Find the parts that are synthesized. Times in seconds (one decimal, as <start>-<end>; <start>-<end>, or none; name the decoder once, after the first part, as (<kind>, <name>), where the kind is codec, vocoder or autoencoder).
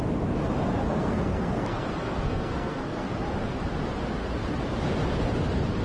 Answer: 0.9-3.1 (codec, SNAC)